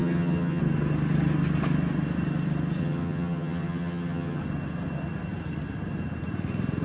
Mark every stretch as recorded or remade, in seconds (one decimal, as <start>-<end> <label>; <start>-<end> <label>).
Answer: 0.0-0.6 remade; 0.6-2.8 recorded; 2.8-4.4 remade; 4.4-6.8 recorded